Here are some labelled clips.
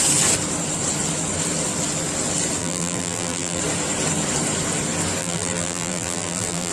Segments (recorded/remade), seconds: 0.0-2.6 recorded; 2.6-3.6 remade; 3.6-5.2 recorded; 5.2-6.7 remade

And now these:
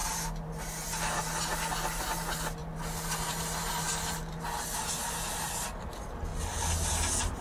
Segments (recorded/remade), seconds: 0.0-7.4 recorded